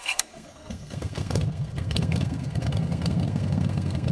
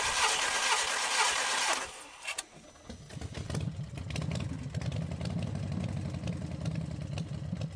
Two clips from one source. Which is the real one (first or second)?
second